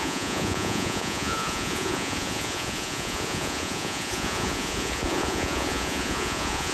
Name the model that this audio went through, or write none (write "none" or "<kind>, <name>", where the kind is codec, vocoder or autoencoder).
vocoder, Vocos